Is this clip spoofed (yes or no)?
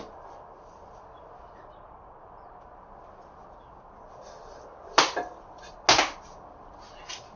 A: no